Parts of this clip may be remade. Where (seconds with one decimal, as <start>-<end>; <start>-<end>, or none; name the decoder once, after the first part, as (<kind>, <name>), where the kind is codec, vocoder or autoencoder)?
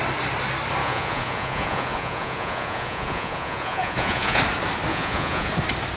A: 0.8-4.4 (vocoder, Vocos); 4.9-5.5